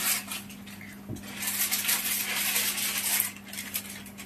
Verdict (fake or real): real